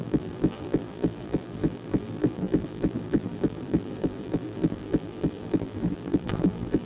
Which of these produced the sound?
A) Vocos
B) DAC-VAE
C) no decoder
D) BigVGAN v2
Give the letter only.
D